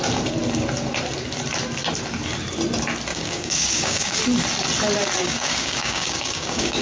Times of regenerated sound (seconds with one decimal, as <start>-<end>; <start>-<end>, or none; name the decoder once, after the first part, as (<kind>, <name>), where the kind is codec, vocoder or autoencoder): 3.1-4.2 (codec, DAC); 5.2-6.8